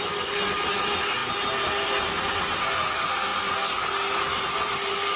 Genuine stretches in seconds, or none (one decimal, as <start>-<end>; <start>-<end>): 0.0-5.2